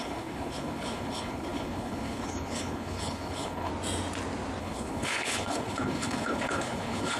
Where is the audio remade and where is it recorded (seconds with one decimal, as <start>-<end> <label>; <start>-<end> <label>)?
0.0-3.7 remade; 3.7-4.6 recorded; 4.6-7.2 remade